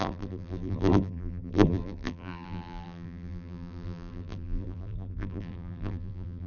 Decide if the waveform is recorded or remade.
remade